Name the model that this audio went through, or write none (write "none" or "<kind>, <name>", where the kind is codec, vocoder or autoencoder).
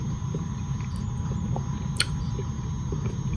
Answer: none